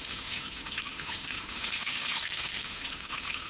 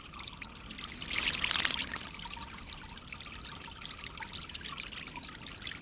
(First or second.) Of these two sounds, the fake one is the first